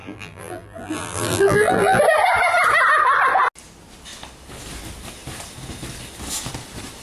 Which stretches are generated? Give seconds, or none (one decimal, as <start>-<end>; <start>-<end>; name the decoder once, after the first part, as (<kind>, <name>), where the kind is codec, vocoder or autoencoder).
0.0-2.0 (vocoder, BigVGAN v2)